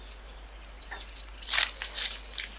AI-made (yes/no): no